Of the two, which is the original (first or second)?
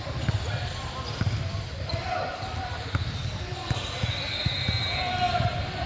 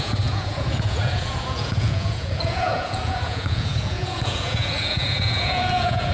first